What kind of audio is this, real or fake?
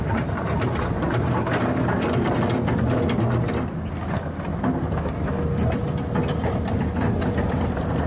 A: real